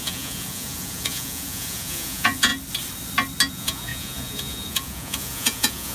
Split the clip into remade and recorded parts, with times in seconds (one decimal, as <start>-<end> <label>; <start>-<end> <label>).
0.0-2.5 remade; 2.5-3.5 recorded; 3.5-5.9 remade